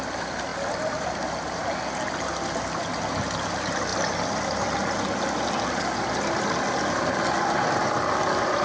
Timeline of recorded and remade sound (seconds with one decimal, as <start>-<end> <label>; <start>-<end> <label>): 0.0-8.6 recorded